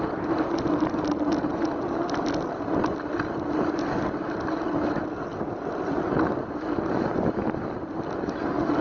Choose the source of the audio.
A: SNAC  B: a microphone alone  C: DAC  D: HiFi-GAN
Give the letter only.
B